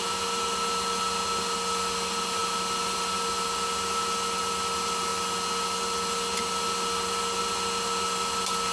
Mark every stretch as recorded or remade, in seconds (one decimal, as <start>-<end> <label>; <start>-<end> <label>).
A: 0.0-8.7 recorded